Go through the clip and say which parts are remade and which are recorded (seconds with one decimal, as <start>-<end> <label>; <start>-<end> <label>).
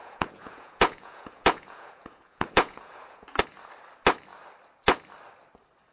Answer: 0.0-3.4 remade; 3.4-5.9 recorded